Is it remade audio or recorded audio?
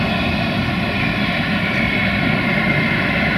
recorded